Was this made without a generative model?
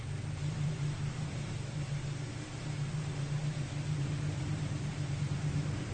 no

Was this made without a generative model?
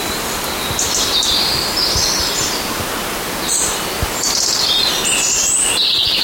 yes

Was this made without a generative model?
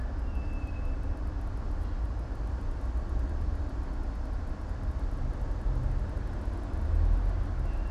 yes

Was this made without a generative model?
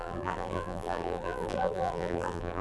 no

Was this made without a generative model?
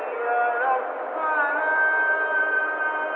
yes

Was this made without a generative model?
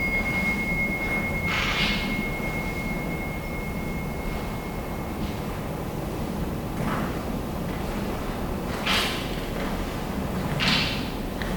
yes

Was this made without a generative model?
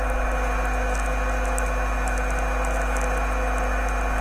yes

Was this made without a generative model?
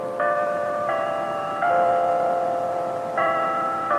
yes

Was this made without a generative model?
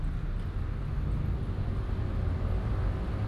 yes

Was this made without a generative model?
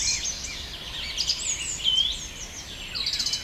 yes